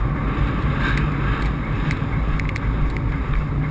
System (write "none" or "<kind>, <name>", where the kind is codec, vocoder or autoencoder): none